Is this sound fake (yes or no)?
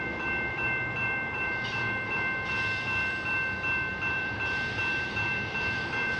yes